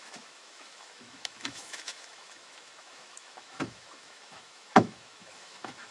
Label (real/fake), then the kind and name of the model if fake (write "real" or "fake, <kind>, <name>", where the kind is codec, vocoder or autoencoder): fake, autoencoder, DAC-VAE